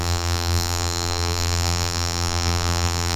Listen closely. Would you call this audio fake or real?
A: fake